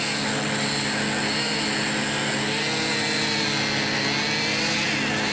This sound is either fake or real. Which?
real